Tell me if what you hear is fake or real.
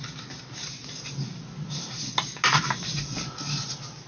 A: real